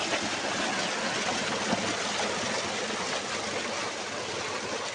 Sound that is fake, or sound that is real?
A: real